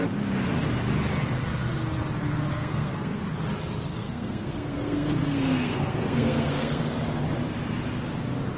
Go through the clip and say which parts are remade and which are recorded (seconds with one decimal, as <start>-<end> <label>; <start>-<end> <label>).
0.0-2.5 recorded; 2.5-3.2 remade; 3.2-3.9 recorded; 3.9-6.8 remade; 6.8-8.6 recorded

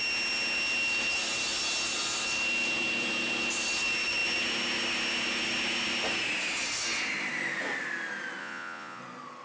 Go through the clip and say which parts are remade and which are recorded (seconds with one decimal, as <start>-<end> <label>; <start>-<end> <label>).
0.0-8.4 recorded; 8.4-9.0 remade; 9.0-9.4 recorded

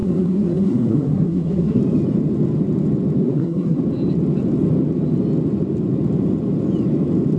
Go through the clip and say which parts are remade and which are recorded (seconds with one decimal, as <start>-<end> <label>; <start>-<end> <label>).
0.0-1.8 remade; 1.8-3.2 recorded; 3.2-3.8 remade; 3.8-7.4 recorded

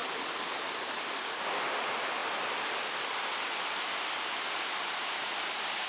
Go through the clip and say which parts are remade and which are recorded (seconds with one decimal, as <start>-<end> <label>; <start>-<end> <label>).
0.0-5.9 remade

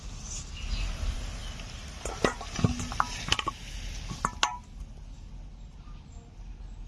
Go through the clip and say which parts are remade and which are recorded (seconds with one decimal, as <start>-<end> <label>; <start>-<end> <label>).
0.0-6.9 recorded